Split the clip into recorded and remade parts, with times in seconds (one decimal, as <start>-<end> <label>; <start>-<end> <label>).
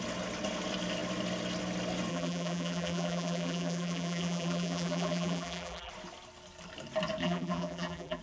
0.0-2.1 recorded; 2.1-5.9 remade; 5.9-7.2 recorded; 7.2-8.2 remade